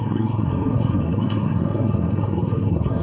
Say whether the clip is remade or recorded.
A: remade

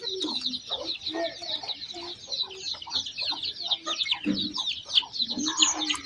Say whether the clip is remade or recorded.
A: recorded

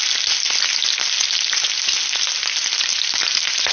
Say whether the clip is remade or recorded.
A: recorded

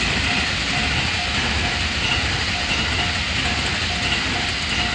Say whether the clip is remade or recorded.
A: recorded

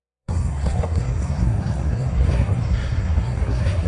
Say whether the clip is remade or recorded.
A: remade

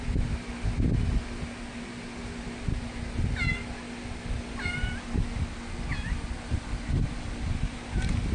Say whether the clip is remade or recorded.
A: recorded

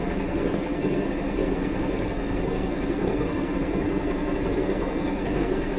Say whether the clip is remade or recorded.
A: remade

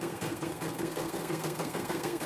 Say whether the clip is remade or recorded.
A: remade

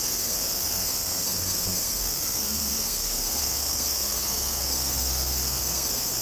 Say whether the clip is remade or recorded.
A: remade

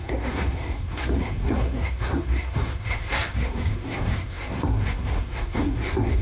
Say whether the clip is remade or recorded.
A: remade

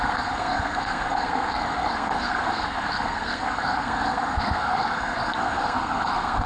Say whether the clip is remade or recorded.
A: remade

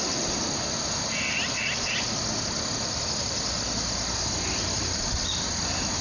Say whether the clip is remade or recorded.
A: recorded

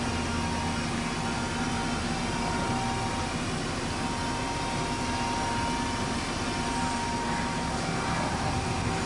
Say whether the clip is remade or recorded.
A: recorded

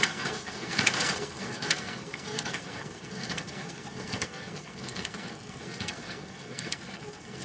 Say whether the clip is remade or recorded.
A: remade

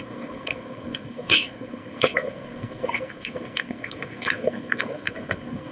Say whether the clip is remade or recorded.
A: remade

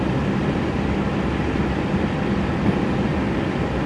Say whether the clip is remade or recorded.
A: recorded